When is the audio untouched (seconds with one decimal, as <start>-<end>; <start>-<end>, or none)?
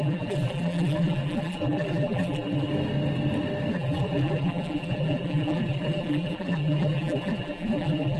2.7-3.7